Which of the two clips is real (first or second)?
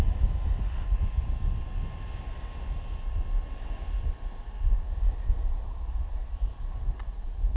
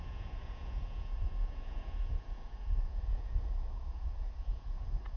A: first